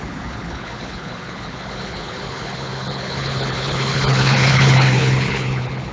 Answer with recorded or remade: remade